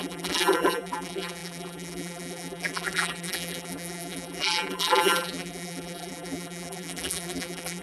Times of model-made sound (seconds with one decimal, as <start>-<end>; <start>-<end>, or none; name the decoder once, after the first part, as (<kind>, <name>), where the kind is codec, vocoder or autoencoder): 0.0-7.8 (vocoder, BigVGAN v2)